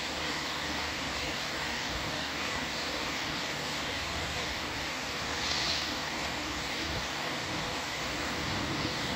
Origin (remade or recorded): remade